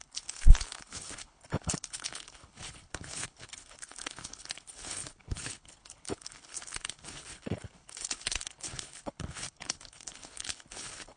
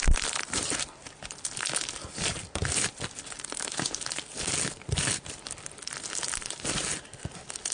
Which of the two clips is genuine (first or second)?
second